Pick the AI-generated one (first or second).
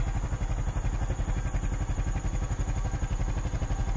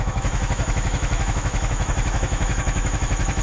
second